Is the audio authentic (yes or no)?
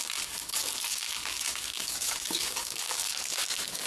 no